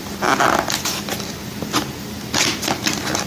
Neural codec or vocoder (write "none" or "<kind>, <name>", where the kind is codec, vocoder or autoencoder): none